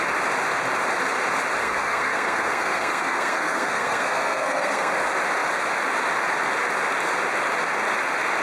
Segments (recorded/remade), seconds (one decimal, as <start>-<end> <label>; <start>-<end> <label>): 0.0-1.6 recorded; 1.6-4.9 remade; 4.9-8.4 recorded